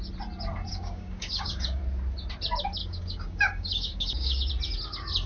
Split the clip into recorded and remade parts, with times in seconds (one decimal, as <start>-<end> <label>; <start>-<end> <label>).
0.0-0.7 recorded; 0.7-1.8 remade; 1.8-2.8 recorded; 2.8-4.5 remade; 4.5-5.3 recorded